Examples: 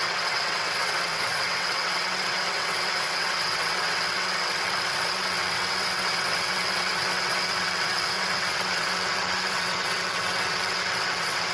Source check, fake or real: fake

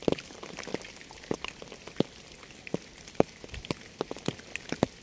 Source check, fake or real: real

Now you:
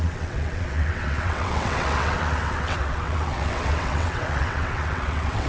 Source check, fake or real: fake